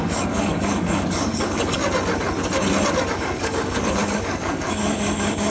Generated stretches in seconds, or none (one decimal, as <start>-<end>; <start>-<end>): 0.0-1.8; 3.1-5.5